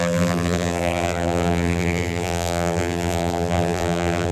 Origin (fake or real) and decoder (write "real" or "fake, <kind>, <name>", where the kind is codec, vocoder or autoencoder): fake, vocoder, BigVGAN v2